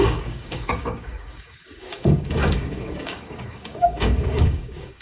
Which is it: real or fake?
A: fake